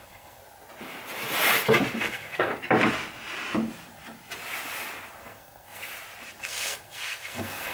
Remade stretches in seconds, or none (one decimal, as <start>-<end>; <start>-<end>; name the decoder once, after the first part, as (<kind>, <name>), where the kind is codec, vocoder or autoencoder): 0.0-0.4 (codec, SNAC); 2.0-2.5; 5.2-5.9; 6.4-7.7

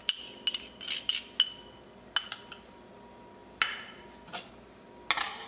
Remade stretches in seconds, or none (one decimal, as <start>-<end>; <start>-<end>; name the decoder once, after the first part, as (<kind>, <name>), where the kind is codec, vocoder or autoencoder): none

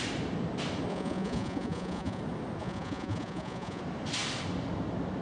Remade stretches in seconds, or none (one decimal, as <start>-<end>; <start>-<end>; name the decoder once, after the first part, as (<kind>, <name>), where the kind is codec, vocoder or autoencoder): 0.9-2.2 (vocoder, Vocos); 2.6-3.8

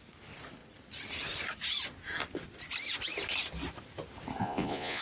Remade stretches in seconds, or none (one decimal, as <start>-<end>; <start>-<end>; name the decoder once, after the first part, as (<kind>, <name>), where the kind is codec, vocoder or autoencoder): 4.4-5.0 (vocoder, Vocos)